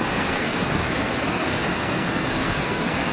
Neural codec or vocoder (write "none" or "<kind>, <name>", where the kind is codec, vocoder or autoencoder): codec, SNAC